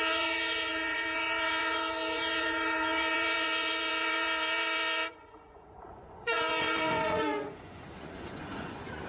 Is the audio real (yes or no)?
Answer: no